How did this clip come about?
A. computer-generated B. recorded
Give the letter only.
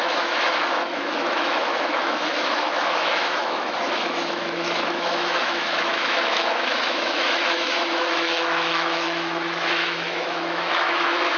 A